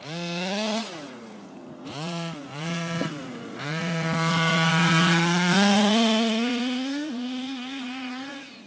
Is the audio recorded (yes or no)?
no